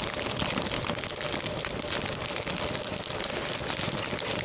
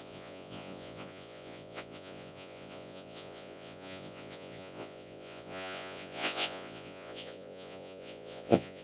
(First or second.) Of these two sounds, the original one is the first